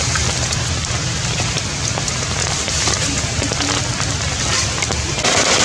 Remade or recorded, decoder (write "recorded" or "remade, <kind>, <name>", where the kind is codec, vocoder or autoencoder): recorded